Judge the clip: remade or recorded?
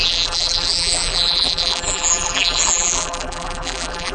remade